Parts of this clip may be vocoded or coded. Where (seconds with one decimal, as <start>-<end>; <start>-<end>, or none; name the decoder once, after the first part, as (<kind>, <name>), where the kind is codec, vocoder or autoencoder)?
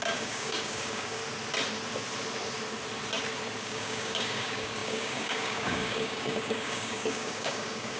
0.0-1.2 (codec, DAC); 3.6-8.0